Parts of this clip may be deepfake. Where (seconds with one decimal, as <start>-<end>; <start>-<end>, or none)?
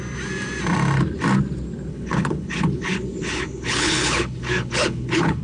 1.9-5.4